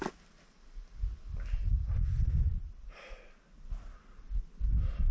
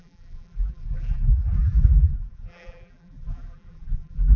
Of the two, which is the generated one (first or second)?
second